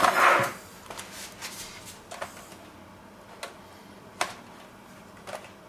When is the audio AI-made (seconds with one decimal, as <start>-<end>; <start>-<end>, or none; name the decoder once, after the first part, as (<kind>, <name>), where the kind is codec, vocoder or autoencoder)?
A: none